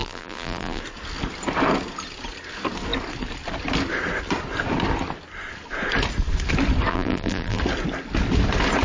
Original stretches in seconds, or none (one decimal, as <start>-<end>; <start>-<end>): 0.8-6.9; 7.6-8.8